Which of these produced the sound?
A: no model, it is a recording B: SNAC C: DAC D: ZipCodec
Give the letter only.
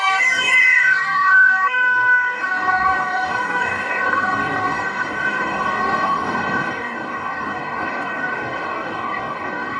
C